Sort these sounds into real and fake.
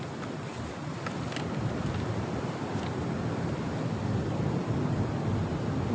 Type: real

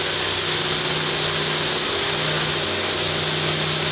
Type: real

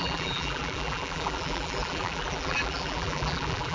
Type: fake